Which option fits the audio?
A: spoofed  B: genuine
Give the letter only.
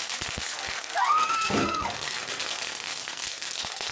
A